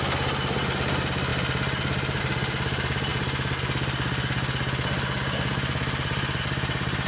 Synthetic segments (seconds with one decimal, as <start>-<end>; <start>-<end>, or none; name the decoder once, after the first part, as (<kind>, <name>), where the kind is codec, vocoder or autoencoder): none